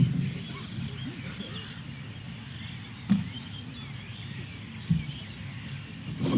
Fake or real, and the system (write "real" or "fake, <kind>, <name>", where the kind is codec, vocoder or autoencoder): real